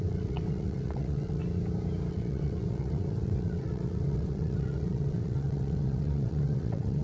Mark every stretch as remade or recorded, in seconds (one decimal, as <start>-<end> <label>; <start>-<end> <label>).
0.0-1.4 remade; 1.4-2.1 recorded; 2.1-7.0 remade